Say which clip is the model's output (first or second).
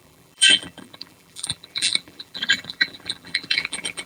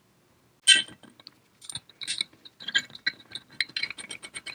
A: first